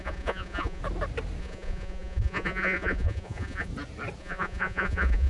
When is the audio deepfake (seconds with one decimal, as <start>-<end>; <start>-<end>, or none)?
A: 0.0-0.8; 1.4-3.7; 4.2-5.3

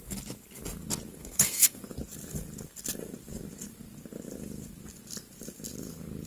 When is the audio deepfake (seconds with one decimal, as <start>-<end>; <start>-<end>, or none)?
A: 1.2-1.8

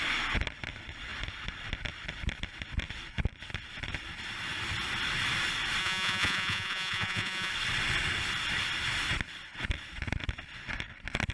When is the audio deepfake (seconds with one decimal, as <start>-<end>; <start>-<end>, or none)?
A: 5.8-7.5